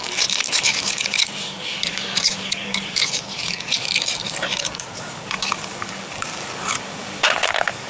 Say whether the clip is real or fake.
fake